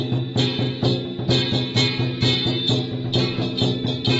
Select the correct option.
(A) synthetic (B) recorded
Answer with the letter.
B